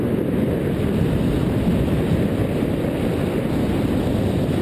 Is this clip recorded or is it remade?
recorded